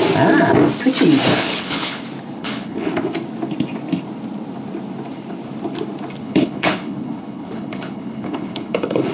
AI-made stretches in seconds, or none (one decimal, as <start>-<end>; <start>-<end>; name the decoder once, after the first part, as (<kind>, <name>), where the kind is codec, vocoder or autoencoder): 1.3-2.0 (codec, HILCodec); 2.4-2.9; 6.2-9.1